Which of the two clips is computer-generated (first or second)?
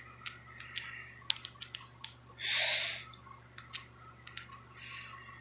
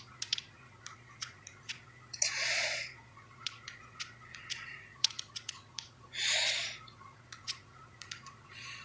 second